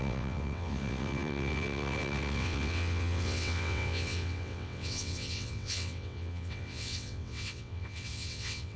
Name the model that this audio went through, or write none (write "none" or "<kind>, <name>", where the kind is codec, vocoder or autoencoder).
vocoder, WaveNeXt